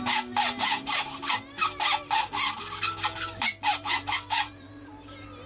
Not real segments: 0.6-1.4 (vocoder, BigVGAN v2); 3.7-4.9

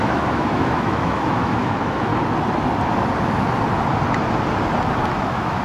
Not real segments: 0.0-2.1 (autoencoder, DAC-VAE); 5.1-5.6